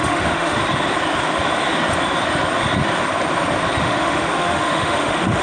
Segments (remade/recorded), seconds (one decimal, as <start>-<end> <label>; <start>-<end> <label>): 0.0-0.6 remade; 0.6-3.8 recorded; 3.8-5.4 remade